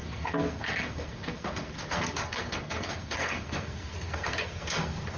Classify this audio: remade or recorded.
remade